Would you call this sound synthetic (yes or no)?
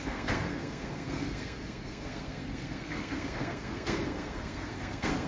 yes